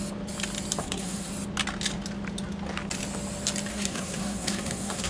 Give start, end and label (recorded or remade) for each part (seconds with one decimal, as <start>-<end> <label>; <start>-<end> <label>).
0.0-0.8 recorded; 0.8-1.3 remade; 1.3-3.7 recorded; 3.7-5.1 remade